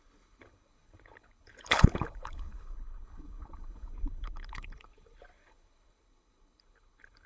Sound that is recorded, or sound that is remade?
remade